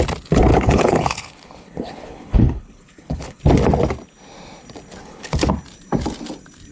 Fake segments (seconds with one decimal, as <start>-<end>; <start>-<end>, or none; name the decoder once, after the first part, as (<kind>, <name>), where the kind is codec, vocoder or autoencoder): 0.5-3.4 (codec, HILCodec); 5.0-5.5